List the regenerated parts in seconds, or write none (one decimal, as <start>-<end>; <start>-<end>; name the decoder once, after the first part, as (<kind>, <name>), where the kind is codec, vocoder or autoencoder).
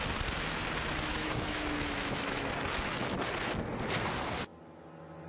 1.1-2.5 (autoencoder, DAC-VAE)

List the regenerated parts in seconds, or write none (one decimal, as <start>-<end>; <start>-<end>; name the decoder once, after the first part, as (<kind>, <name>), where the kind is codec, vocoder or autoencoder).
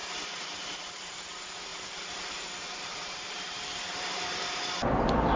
1.7-4.6 (vocoder, BigVGAN v2)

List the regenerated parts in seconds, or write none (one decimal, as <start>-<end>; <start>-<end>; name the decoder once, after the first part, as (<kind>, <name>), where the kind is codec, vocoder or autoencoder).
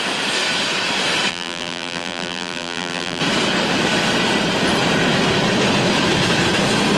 1.3-3.2 (vocoder, BigVGAN v2)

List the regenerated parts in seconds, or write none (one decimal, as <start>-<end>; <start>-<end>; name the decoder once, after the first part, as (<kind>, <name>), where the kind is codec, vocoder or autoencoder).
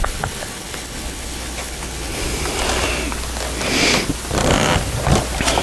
0.0-2.2 (codec, HILCodec)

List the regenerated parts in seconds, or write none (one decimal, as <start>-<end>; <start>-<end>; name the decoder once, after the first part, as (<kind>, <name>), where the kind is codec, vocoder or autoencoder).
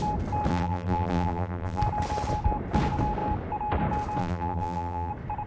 0.5-1.8 (vocoder, BigVGAN v2); 4.2-5.1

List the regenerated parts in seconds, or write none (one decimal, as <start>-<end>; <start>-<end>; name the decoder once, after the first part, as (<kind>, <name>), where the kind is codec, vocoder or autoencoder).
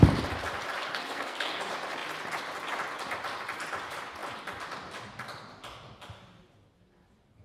0.9-1.6 (codec, SNAC)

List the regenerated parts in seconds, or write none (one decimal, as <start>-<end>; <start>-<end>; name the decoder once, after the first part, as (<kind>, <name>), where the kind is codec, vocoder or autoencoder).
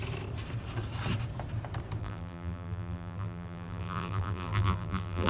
2.0-5.3 (vocoder, BigVGAN v2)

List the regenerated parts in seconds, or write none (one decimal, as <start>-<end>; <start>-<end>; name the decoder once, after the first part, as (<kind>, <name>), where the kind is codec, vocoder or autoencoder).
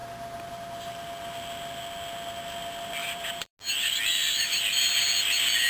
3.0-3.5 (vocoder, BigVGAN v2); 4.1-4.9